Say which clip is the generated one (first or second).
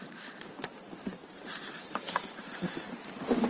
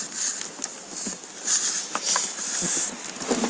first